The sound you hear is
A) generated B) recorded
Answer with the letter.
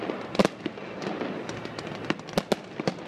B